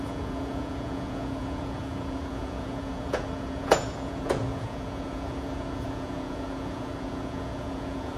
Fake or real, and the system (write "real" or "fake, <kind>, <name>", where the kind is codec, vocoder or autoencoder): fake, vocoder, Vocos